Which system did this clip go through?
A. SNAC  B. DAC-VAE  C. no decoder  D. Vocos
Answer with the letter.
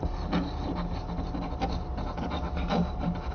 C